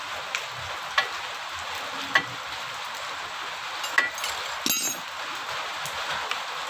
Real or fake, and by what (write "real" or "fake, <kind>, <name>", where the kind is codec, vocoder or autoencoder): real